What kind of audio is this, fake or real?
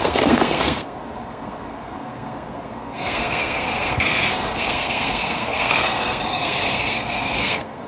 fake